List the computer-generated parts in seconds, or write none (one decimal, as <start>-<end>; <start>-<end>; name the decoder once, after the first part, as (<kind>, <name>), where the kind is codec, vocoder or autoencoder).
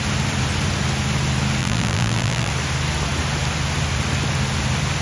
1.6-2.5 (vocoder, BigVGAN v2)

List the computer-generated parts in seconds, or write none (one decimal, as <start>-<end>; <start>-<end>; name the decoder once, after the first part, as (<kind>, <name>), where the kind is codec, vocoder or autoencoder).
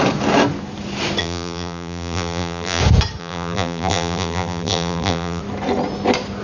1.2-2.8 (vocoder, BigVGAN v2); 3.2-5.4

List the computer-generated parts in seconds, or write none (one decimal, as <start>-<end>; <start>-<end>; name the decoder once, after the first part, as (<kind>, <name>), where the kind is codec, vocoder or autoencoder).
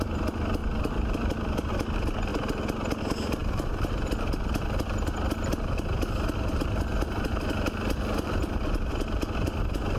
0.6-1.7 (vocoder, BigVGAN v2)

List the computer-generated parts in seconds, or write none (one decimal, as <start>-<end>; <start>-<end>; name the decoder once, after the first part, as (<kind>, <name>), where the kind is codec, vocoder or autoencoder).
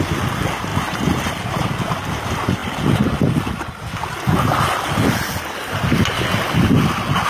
0.7-1.3 (vocoder, BigVGAN v2)